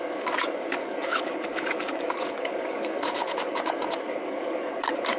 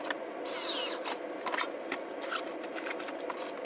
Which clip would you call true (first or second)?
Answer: second